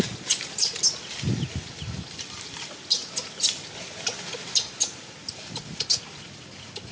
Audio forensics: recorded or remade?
recorded